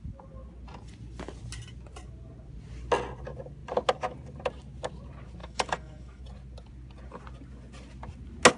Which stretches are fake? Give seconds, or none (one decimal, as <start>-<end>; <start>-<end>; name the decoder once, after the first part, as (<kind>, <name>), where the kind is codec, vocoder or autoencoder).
5.4-6.2 (autoencoder, DAC-VAE)